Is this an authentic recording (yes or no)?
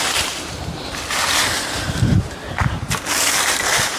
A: no